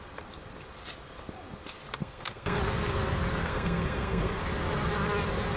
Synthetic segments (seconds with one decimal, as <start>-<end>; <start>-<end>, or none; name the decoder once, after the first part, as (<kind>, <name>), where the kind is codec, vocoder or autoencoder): 2.0-2.6 (codec, SNAC); 3.4-4.4